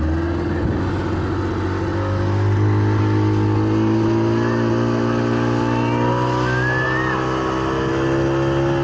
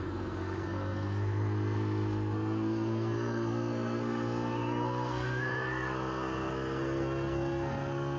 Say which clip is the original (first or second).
first